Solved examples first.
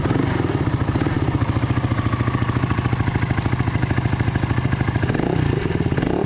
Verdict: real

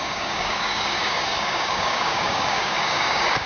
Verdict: fake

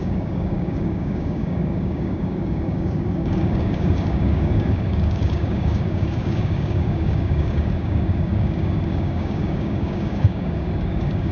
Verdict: fake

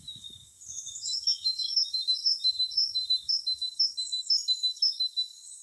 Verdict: fake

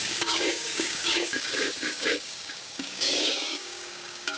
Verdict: fake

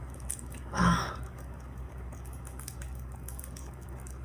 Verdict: fake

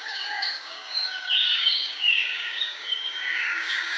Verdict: fake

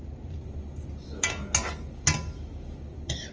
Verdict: real